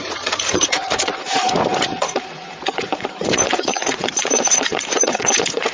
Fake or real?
fake